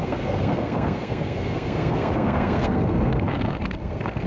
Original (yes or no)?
no